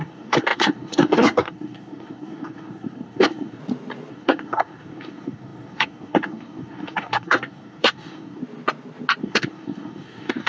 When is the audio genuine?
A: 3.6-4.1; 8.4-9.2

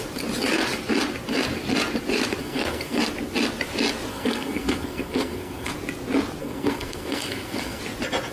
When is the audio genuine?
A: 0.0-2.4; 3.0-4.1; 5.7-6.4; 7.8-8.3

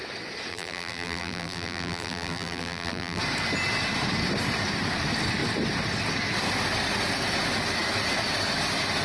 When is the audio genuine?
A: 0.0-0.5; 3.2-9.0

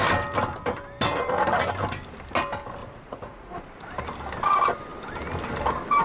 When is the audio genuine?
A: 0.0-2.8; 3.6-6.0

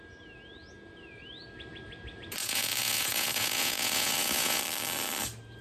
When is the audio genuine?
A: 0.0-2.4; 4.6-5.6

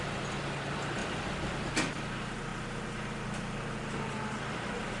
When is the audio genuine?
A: 0.0-1.0; 1.7-5.0